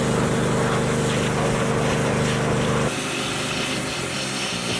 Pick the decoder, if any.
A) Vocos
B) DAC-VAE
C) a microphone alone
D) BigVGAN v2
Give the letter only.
C